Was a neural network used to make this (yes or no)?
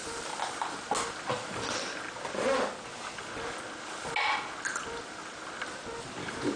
no